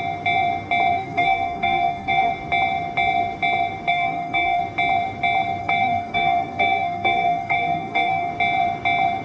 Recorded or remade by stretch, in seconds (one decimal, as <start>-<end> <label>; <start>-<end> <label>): 0.0-0.9 recorded; 0.9-2.3 remade; 2.3-3.9 recorded; 3.9-4.6 remade; 4.6-5.6 recorded; 5.6-8.3 remade; 8.3-9.2 recorded